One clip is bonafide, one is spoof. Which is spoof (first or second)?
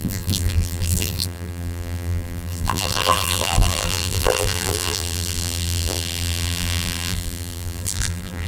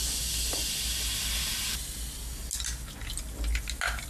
first